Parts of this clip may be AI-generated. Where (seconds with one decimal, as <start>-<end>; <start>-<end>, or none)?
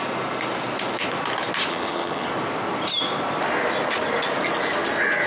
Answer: 1.7-2.3